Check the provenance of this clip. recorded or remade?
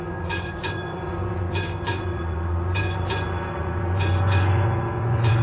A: remade